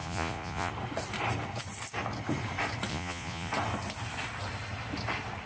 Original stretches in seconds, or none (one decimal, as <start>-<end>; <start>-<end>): 0.7-2.9; 3.5-5.5